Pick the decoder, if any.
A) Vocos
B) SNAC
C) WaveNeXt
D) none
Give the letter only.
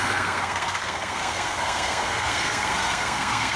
B